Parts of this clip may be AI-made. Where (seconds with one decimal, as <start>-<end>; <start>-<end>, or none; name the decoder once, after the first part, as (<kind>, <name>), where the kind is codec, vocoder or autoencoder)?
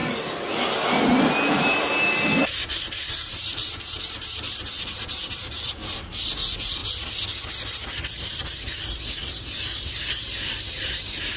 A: 1.5-6.8 (vocoder, BigVGAN v2); 7.6-11.4